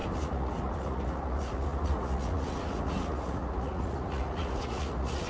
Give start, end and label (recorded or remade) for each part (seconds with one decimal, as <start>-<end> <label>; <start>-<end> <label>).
0.0-5.3 remade